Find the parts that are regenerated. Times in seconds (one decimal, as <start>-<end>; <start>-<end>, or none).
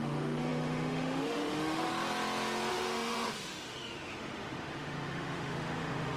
0.0-1.9; 2.7-6.2